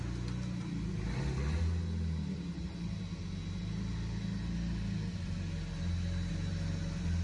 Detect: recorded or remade recorded